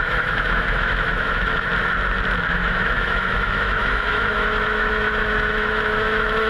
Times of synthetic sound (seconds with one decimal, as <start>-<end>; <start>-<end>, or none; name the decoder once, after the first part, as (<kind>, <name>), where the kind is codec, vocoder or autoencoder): 0.0-1.7 (autoencoder, DAC-VAE); 2.5-6.5